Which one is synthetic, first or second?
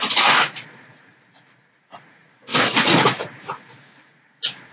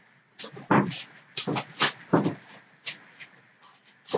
first